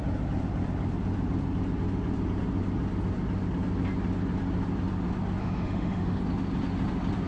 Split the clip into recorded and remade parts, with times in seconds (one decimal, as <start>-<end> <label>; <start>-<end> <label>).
0.0-5.4 recorded; 5.4-6.2 remade; 6.2-7.3 recorded